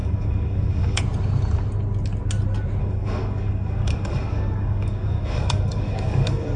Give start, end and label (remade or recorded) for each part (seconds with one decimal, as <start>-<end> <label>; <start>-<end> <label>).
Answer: 0.0-1.0 remade; 1.0-2.8 recorded; 2.8-6.6 remade

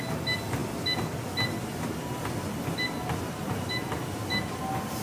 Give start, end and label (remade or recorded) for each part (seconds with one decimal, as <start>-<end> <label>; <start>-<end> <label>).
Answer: 0.0-5.0 recorded

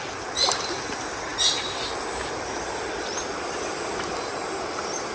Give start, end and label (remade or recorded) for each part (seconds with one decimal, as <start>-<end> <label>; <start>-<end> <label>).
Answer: 0.0-5.1 recorded

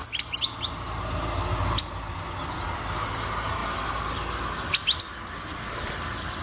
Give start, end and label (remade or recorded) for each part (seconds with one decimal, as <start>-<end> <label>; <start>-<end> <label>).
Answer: 0.0-6.4 recorded